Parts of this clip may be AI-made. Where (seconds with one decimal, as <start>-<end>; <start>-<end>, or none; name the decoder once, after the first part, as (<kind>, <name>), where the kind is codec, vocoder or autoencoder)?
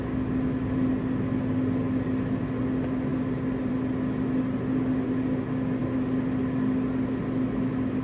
3.1-3.7 (vocoder, BigVGAN v2); 5.8-7.2